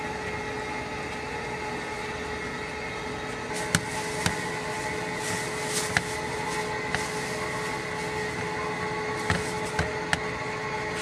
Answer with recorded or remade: recorded